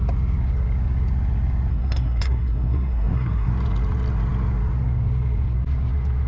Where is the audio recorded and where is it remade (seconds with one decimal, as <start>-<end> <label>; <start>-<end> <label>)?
0.0-1.7 recorded; 1.7-3.5 remade; 3.5-6.3 recorded